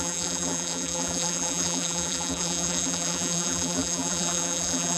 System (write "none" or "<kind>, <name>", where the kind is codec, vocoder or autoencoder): vocoder, BigVGAN v2